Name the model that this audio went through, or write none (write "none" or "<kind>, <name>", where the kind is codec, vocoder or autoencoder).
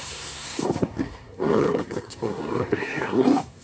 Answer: codec, SNAC